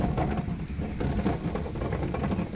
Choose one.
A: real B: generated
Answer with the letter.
A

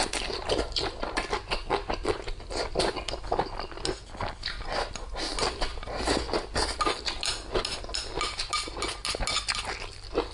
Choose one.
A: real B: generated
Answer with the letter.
A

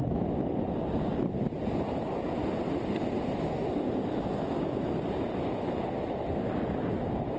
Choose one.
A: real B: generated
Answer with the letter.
A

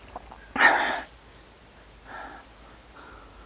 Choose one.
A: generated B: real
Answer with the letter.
B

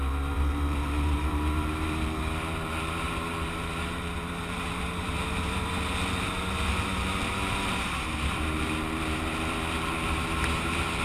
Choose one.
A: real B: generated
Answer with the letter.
B